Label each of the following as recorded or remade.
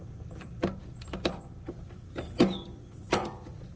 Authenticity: remade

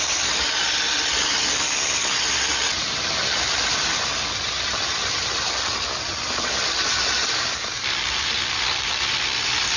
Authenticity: recorded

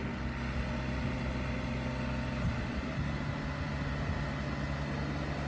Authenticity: recorded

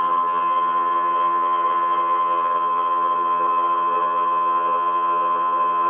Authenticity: remade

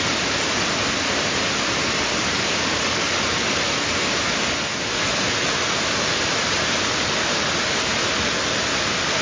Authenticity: recorded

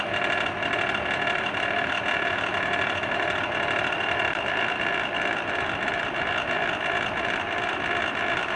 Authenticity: recorded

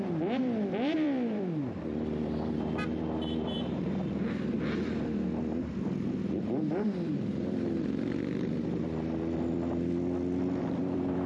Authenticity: remade